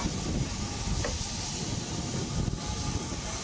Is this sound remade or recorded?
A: recorded